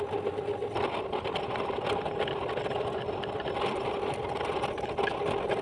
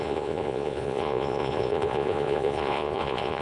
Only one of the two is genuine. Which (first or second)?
first